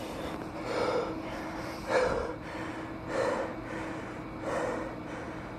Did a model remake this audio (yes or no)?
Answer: no